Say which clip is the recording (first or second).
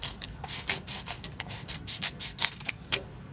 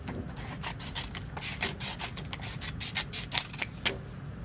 second